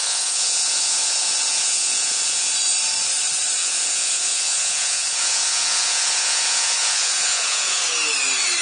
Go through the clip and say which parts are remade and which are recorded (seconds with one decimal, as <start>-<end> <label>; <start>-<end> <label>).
0.0-2.5 remade; 2.5-3.6 recorded; 3.6-7.8 remade; 7.8-8.6 recorded